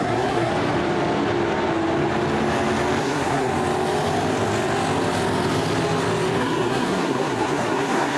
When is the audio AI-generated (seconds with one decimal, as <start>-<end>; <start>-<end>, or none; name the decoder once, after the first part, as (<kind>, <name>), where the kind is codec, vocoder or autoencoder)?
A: 0.0-0.5 (codec, SNAC); 3.0-3.5; 6.4-8.2